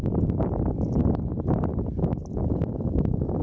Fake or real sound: real